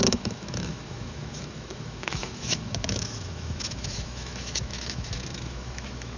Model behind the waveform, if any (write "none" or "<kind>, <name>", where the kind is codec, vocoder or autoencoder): autoencoder, DAC-VAE